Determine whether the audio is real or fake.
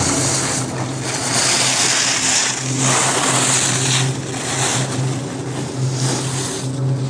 real